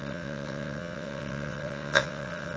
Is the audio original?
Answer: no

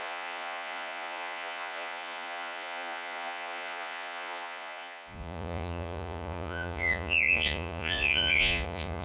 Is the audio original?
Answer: no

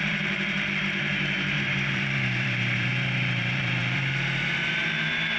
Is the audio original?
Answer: no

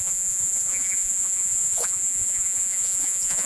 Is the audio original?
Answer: no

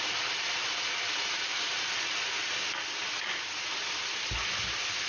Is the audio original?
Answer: yes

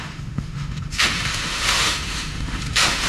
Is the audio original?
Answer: no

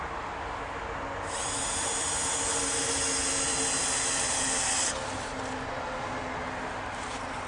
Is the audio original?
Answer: yes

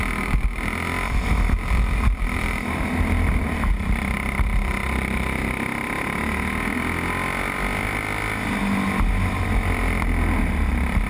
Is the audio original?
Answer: yes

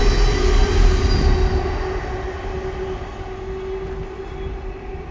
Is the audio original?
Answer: yes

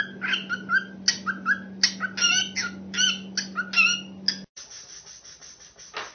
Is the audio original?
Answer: yes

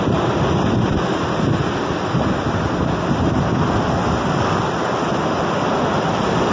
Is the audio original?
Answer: yes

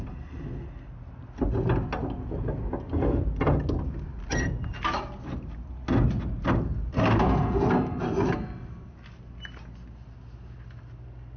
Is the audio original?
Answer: yes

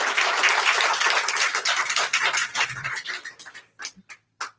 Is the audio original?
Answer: no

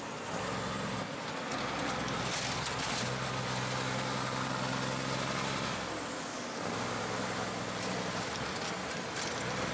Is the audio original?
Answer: yes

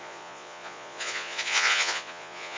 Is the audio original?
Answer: no